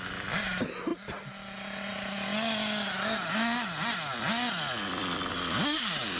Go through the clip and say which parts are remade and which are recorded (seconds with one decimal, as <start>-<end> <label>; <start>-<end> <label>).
0.0-5.3 recorded; 5.3-6.2 remade